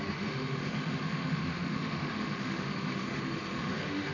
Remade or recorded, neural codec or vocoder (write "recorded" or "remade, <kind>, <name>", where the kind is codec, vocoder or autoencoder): remade, autoencoder, DAC-VAE